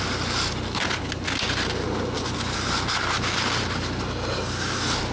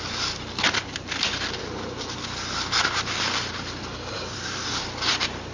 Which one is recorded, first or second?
first